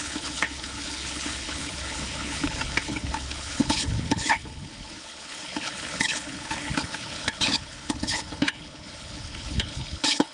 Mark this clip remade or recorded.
remade